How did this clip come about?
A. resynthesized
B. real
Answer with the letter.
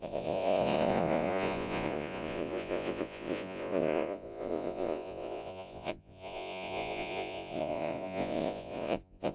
A